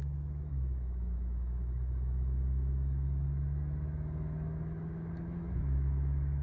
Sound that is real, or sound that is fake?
fake